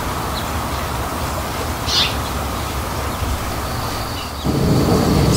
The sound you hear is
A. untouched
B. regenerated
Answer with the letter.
A